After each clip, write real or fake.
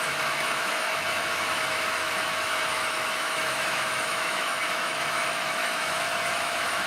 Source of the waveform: fake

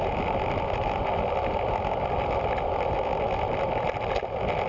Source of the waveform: real